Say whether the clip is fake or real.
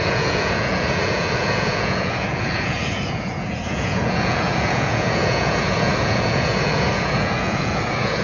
fake